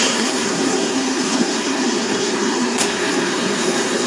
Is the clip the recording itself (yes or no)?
no